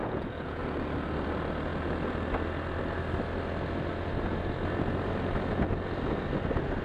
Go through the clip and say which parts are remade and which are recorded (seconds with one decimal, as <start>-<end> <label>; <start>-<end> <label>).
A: 0.0-0.6 remade; 0.6-6.8 recorded